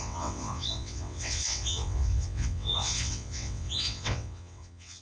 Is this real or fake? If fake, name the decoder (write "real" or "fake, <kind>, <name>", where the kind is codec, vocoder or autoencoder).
fake, vocoder, WaveNeXt